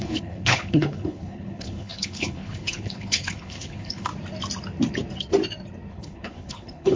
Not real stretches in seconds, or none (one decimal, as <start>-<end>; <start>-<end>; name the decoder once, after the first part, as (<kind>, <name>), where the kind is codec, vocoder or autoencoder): 0.0-4.1 (codec, HILCodec); 5.9-7.0